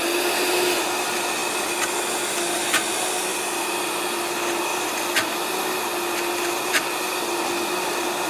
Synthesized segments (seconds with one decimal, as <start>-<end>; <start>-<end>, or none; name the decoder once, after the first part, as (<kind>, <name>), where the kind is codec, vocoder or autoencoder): none